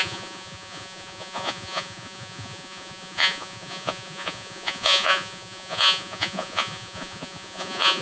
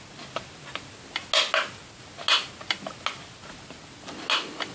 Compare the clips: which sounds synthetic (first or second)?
first